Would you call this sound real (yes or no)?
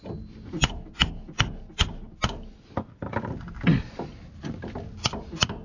yes